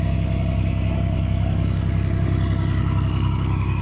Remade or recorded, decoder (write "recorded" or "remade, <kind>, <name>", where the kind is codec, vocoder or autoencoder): remade, codec, DAC